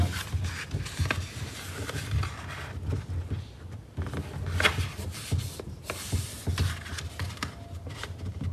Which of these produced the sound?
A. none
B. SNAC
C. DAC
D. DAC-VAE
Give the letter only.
A